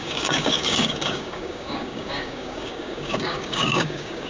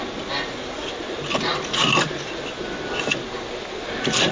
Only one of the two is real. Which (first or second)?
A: second